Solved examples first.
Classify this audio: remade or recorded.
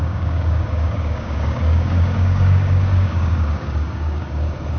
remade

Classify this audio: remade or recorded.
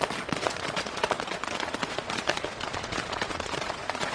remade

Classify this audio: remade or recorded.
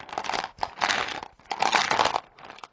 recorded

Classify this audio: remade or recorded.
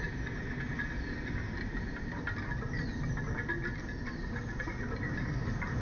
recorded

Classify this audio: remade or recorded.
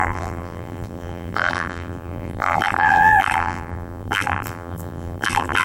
remade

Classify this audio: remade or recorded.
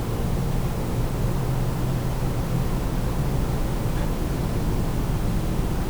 recorded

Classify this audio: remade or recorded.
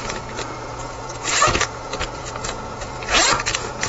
remade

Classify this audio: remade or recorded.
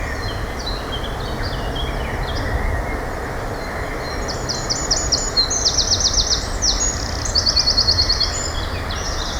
recorded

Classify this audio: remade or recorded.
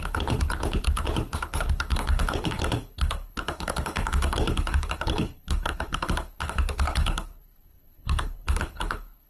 remade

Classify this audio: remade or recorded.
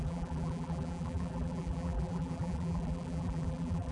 remade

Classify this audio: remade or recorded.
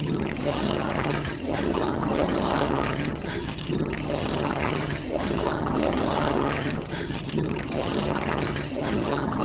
remade